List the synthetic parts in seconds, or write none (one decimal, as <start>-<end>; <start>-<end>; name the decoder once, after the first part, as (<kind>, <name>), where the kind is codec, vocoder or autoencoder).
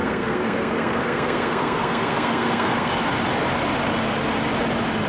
0.0-2.9 (codec, SNAC)